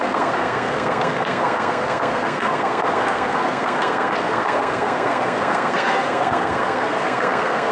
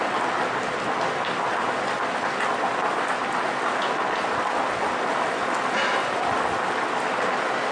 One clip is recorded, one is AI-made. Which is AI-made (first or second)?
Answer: first